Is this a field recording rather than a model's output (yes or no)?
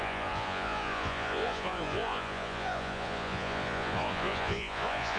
no